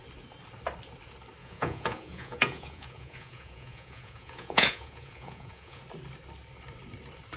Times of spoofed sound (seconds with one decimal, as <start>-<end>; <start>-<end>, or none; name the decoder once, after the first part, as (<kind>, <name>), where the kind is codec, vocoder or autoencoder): 1.4-5.8 (vocoder, Vocos)